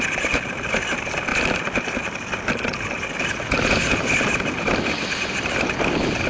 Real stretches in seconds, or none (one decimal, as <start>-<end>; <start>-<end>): 1.3-5.1